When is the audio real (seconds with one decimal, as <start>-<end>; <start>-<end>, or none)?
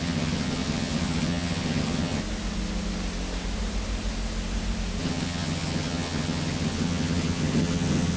2.2-5.0